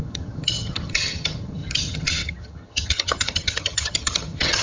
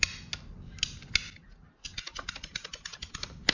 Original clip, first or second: second